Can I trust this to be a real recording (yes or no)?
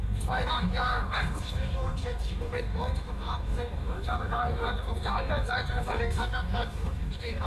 no